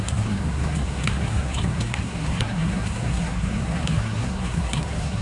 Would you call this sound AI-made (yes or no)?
yes